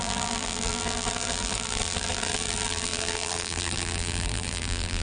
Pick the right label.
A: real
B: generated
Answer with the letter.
B